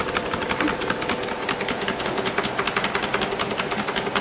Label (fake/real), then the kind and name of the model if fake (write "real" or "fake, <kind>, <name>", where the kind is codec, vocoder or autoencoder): real